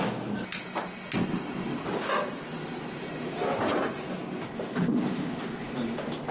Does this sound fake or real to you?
real